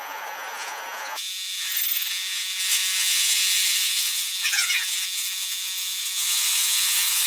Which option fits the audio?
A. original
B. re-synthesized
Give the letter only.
B